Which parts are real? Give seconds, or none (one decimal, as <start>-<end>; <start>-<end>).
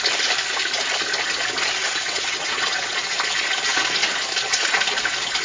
0.0-1.8; 2.9-5.4